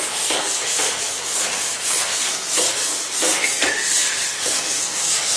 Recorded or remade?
remade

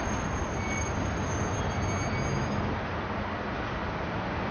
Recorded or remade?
recorded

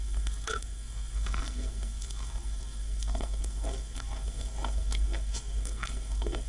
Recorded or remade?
remade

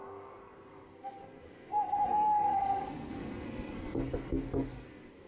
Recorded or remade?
remade